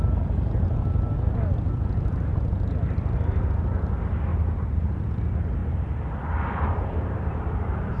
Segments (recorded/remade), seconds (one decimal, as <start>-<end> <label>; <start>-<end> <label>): 0.0-2.3 recorded; 2.3-3.6 remade; 3.6-4.3 recorded; 4.3-4.9 remade; 4.9-5.6 recorded; 5.6-8.0 remade